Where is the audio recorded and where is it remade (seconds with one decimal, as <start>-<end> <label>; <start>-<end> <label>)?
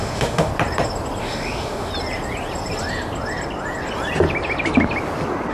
0.0-0.5 remade; 0.5-1.2 recorded; 1.2-1.9 remade; 1.9-5.5 recorded